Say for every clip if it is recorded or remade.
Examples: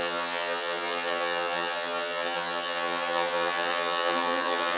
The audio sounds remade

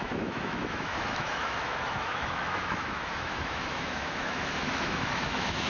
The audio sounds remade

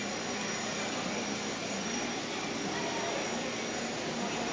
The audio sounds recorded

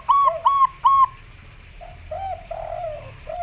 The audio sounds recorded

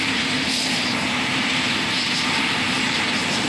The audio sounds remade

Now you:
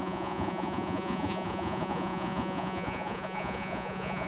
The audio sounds remade